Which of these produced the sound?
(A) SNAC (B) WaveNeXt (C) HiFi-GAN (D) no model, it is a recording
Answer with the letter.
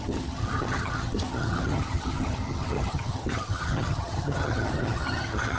C